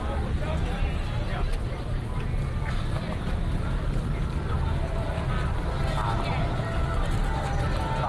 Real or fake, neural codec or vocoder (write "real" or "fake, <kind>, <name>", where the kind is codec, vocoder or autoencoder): real